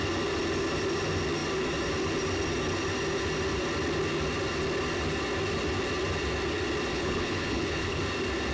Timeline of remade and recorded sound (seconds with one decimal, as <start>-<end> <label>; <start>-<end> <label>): 0.0-6.9 recorded; 6.9-8.0 remade; 8.0-8.5 recorded